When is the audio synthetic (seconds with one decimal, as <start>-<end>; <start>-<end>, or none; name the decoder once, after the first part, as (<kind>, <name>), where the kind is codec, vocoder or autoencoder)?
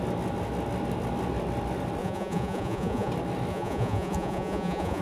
2.0-3.1 (vocoder, Vocos); 3.5-5.0